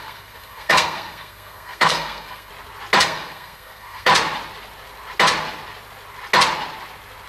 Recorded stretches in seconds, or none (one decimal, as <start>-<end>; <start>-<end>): 2.5-3.0; 4.1-7.3